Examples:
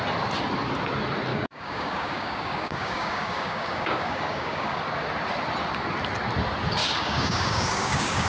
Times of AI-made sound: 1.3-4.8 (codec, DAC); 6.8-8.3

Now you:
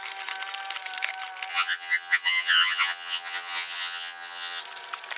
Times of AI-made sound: 1.5-4.6 (vocoder, HiFi-GAN)